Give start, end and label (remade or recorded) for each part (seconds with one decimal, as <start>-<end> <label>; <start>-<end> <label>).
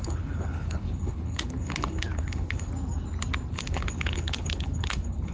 0.0-2.7 remade; 2.7-3.5 recorded; 3.5-5.3 remade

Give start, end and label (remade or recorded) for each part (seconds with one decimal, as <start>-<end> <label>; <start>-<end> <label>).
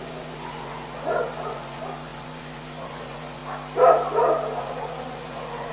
0.0-3.4 remade; 3.4-4.6 recorded; 4.6-5.7 remade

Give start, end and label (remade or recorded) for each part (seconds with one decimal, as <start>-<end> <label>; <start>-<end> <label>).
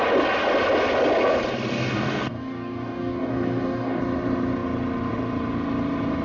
0.0-1.7 recorded; 1.7-4.0 remade; 4.0-6.2 recorded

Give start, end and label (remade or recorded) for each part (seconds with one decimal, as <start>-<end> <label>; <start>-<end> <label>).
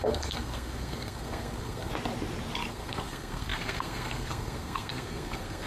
0.0-1.9 remade; 1.9-2.7 recorded; 2.7-5.7 remade